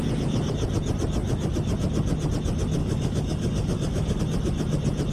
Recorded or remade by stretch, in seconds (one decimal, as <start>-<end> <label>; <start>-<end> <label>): 0.0-2.8 recorded; 2.8-4.2 remade; 4.2-5.1 recorded